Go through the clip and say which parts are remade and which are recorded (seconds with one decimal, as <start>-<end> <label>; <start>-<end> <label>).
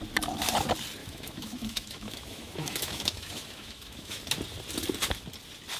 0.0-1.0 recorded; 1.0-4.2 remade; 4.2-5.8 recorded